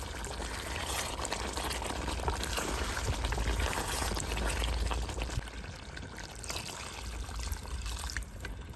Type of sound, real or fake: real